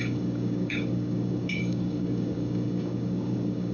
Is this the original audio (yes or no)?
no